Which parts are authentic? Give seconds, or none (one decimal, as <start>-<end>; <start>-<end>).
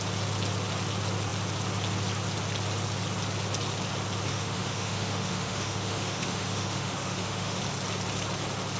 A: 0.0-4.3; 7.6-8.8